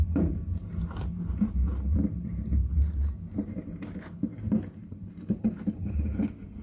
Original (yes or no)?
no